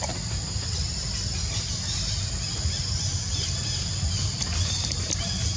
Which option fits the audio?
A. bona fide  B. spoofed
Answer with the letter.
A